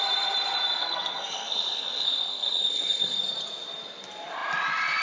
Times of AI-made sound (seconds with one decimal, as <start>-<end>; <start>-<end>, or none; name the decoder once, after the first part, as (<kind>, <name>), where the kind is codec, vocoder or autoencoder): 0.8-3.2 (codec, SNAC)